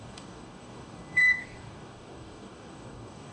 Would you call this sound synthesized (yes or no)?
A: yes